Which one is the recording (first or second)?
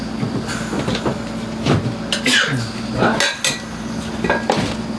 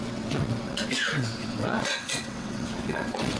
first